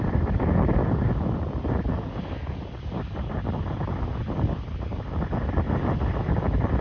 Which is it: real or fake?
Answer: real